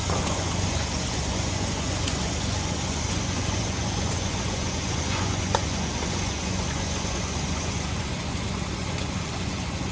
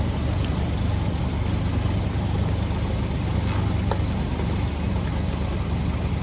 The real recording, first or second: second